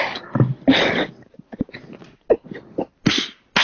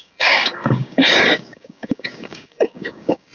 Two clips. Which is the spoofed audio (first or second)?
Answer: second